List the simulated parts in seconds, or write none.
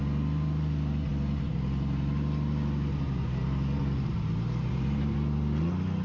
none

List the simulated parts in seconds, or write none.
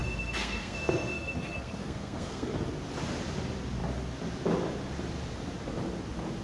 0.0-2.5 (codec, SNAC)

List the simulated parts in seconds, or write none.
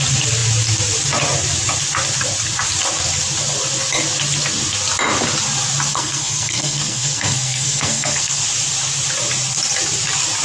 5.9-8.4 (codec, SNAC)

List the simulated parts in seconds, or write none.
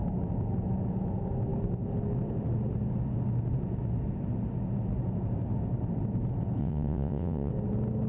6.6-7.5 (vocoder, WaveNeXt)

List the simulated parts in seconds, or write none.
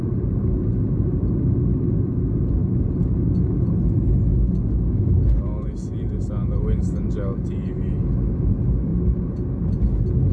none